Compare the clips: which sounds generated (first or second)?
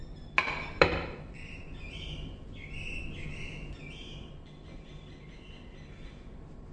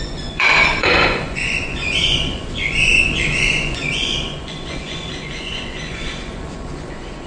second